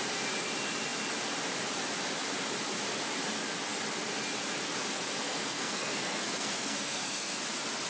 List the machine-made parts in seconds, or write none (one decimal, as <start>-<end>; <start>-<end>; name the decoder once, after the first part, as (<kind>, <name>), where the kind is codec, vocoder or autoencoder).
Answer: 5.2-7.4 (codec, SNAC)